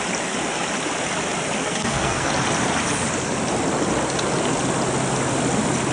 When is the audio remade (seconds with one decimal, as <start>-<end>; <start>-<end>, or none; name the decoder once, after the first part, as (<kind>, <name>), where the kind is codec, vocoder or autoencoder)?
1.6-2.3 (codec, SNAC)